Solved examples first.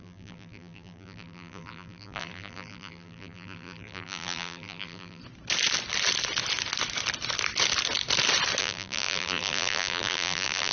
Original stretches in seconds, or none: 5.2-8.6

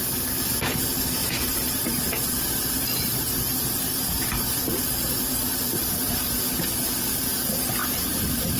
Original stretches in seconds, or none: 0.0-1.2; 4.9-8.6

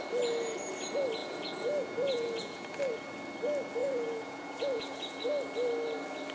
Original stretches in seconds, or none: 0.0-1.2; 2.8-3.8; 5.2-6.3

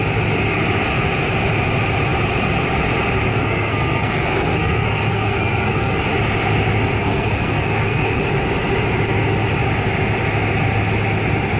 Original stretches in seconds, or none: 0.0-3.3; 6.0-7.0; 8.2-11.6